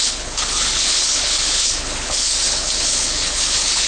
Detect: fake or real fake